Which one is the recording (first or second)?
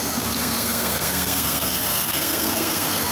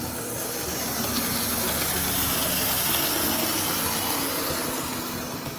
second